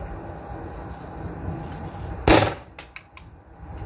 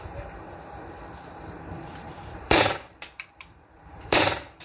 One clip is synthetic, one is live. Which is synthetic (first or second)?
second